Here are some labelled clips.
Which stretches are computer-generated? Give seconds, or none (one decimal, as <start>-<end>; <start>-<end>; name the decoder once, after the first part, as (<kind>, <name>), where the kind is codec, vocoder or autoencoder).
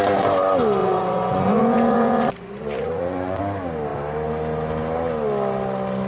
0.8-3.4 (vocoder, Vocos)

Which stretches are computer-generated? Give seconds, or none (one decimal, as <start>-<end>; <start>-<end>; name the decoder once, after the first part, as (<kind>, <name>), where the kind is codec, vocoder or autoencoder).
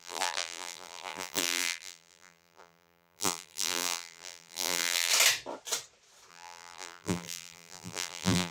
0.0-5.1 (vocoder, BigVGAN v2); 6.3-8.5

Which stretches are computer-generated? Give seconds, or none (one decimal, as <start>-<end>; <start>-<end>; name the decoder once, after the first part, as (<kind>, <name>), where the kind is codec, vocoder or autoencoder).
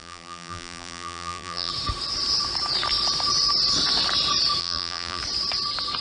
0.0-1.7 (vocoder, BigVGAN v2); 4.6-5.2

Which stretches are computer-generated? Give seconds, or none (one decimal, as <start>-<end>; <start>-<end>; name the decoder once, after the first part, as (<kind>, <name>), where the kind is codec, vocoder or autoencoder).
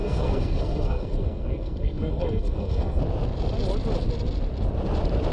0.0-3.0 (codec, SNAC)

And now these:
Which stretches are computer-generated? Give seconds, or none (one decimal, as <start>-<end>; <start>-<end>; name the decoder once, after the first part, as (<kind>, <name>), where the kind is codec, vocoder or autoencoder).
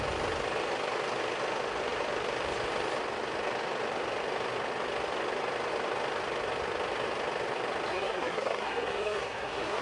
7.9-9.8 (codec, SNAC)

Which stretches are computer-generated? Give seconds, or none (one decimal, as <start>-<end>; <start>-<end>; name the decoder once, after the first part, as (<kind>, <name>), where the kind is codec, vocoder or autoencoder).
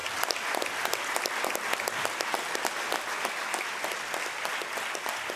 none